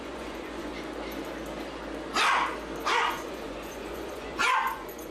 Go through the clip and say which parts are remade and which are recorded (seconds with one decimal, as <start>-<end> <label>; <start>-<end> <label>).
0.0-0.7 remade; 0.7-2.9 recorded; 2.9-5.1 remade